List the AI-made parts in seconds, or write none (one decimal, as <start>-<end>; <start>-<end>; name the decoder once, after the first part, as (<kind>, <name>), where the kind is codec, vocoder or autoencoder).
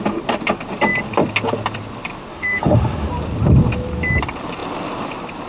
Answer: 2.3-3.1 (autoencoder, DAC-VAE)